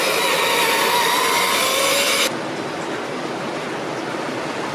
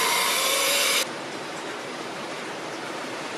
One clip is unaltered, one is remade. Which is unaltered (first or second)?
first